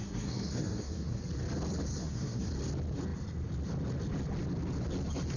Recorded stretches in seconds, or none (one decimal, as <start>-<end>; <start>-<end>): 1.2-2.0; 2.5-5.4